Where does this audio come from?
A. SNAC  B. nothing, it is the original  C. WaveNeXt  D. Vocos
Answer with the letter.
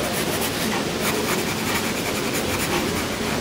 B